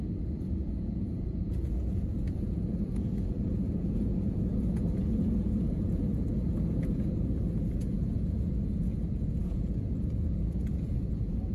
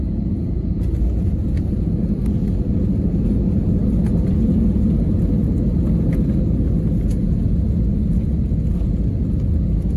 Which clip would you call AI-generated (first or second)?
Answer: first